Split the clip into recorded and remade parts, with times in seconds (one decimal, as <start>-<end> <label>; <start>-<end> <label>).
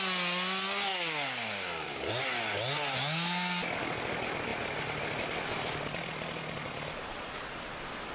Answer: 0.0-0.9 recorded; 0.9-2.1 remade; 2.1-8.1 recorded